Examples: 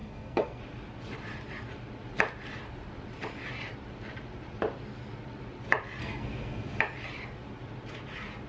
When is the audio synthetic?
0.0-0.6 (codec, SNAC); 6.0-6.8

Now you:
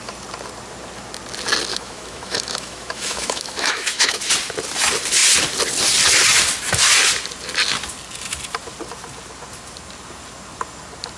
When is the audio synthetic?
1.7-4.2 (autoencoder, DAC-VAE)

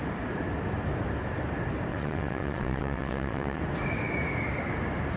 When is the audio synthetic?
1.9-3.6 (vocoder, WaveNeXt)

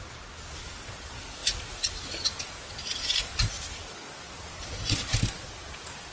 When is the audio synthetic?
none

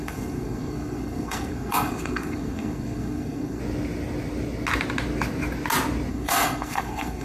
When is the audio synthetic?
0.0-3.6 (codec, SNAC); 6.1-7.2

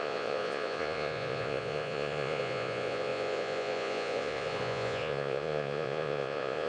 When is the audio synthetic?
0.0-6.7 (vocoder, Vocos)

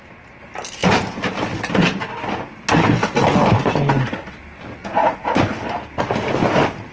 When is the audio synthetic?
4.8-5.3 (vocoder, Vocos)

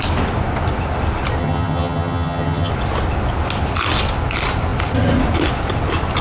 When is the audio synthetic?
1.4-2.7 (vocoder, HiFi-GAN)